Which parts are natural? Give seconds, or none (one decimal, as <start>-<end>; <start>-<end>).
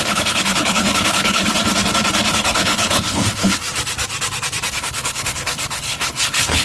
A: 1.4-2.3; 3.6-4.7